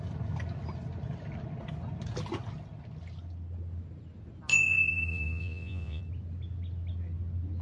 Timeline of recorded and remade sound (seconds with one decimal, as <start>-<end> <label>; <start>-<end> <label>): 0.0-4.5 recorded; 4.5-6.0 remade; 6.0-7.6 recorded